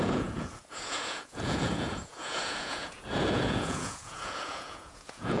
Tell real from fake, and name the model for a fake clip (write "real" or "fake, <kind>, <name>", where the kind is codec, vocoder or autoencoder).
fake, vocoder, Vocos